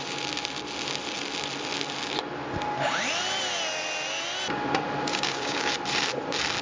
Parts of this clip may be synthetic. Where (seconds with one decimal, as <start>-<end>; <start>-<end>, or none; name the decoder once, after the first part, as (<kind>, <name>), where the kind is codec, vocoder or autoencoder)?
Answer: 5.1-5.7 (codec, DAC)

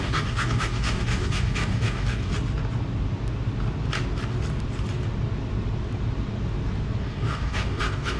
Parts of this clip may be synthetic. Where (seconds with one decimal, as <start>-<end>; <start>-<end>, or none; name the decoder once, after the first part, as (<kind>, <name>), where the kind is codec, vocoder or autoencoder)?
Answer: 0.0-2.3 (codec, DAC); 7.0-8.2

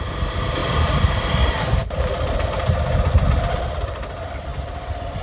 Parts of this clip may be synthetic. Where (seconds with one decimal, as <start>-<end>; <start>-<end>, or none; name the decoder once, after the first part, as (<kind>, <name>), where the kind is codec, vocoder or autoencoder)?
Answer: none

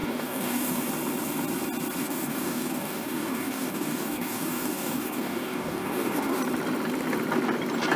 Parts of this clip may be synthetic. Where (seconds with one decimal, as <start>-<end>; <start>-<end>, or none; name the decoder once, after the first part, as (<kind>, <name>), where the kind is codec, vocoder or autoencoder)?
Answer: 0.0-0.9 (codec, DAC); 2.0-6.4

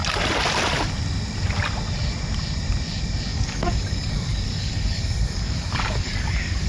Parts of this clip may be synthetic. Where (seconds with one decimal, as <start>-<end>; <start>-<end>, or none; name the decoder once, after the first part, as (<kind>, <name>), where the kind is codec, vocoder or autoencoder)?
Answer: 3.3-6.7 (codec, DAC)

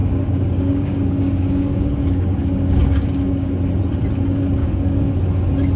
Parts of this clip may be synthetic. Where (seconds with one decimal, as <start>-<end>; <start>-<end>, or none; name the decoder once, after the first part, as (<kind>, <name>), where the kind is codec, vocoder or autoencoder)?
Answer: 0.0-3.5 (codec, DAC); 4.6-5.1

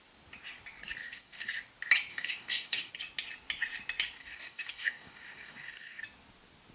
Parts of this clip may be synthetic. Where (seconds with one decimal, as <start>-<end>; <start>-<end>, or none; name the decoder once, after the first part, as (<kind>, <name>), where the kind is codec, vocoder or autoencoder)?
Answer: 1.0-1.5 (codec, DAC); 2.1-2.9; 4.2-6.0